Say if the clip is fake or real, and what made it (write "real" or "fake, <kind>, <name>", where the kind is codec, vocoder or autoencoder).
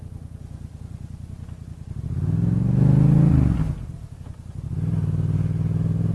real